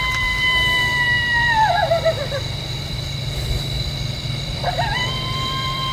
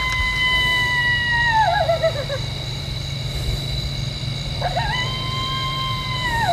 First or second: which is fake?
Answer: first